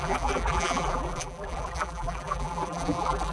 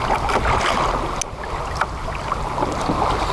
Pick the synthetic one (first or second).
first